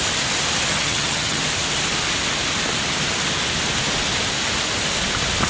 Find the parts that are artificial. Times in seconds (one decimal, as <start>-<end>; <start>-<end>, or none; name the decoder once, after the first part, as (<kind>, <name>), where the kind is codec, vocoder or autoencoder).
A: 0.7-1.4 (vocoder, HiFi-GAN)